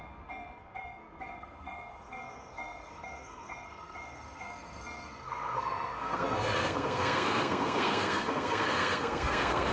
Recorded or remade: remade